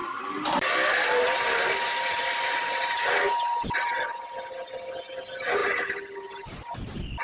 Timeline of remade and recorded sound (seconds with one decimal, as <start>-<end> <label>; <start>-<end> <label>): 0.0-4.3 remade; 4.3-5.6 recorded; 5.6-7.2 remade